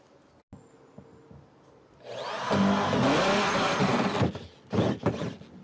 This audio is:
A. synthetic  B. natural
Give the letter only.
B